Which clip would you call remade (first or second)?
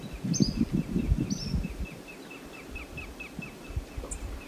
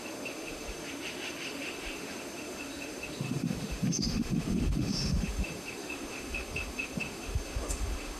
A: second